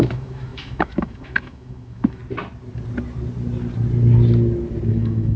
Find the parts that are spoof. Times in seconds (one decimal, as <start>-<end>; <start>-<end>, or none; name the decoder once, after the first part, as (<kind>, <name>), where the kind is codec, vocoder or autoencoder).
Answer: 0.0-2.2 (autoencoder, DAC-VAE); 4.9-5.4